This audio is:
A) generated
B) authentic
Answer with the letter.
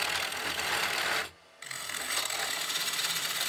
B